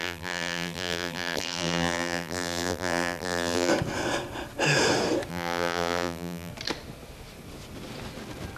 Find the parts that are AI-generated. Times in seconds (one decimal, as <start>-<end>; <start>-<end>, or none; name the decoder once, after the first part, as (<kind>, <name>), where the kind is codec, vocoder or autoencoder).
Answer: 0.0-3.7 (vocoder, BigVGAN v2); 5.3-6.5